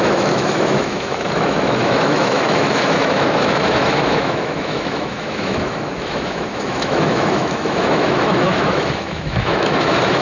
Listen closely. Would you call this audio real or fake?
fake